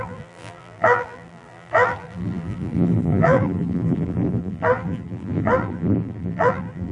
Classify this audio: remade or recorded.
remade